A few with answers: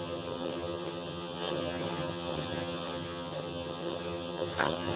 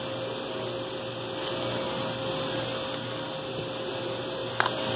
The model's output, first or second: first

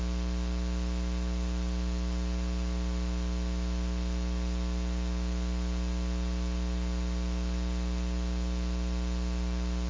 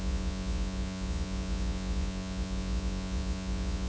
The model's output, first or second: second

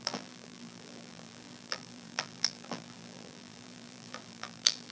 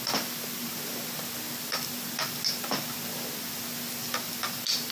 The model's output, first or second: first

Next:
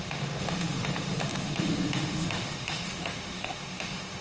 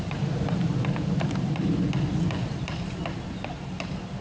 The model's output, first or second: first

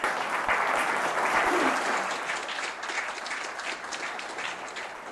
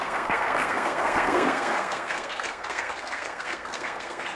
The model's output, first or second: second